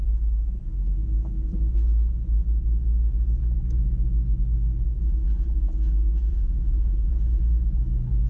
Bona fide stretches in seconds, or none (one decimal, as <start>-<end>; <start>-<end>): 0.0-6.3; 7.1-8.3